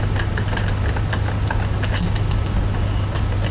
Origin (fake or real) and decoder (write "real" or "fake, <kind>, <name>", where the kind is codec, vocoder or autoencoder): real